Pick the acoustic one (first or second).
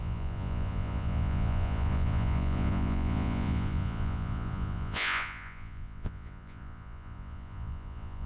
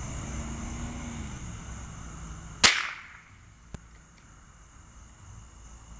second